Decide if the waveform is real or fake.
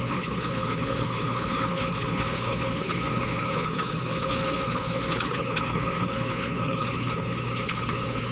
fake